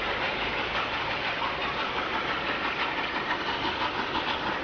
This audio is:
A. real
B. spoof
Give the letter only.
A